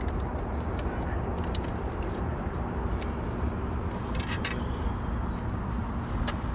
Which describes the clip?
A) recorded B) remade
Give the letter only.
A